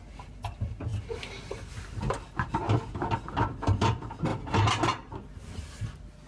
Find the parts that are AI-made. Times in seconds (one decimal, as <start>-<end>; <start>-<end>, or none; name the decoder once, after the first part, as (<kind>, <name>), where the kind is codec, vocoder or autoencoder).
none